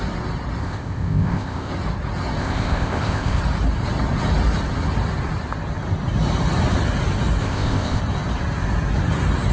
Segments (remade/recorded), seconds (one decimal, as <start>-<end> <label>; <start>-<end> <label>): 0.0-0.6 recorded; 0.6-1.7 remade; 1.7-2.4 recorded; 2.4-3.4 remade; 3.4-7.4 recorded; 7.4-8.0 remade; 8.0-9.5 recorded